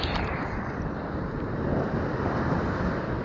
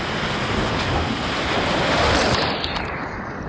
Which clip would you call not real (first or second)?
first